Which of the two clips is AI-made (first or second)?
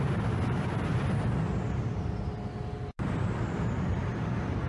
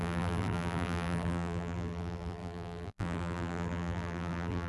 second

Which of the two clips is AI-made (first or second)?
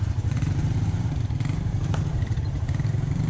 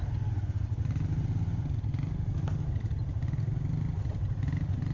first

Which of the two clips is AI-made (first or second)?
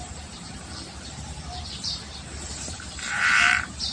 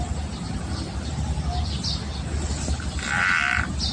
first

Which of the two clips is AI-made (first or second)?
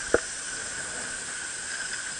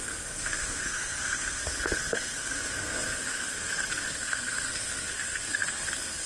second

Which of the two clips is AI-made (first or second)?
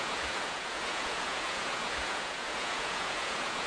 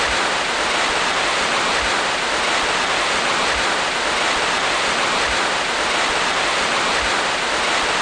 first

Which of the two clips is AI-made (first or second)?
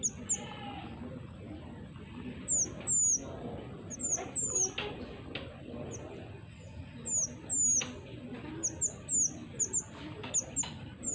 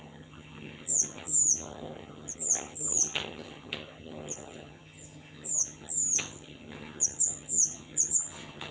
second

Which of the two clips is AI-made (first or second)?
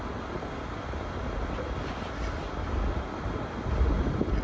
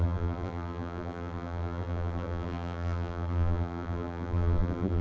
second